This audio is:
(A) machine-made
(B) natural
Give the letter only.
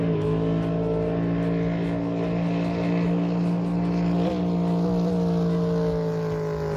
B